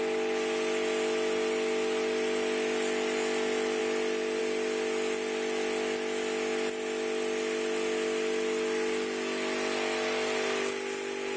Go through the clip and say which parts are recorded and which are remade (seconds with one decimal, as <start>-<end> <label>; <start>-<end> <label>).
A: 0.0-11.4 recorded